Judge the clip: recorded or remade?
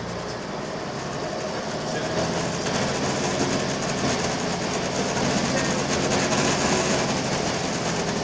recorded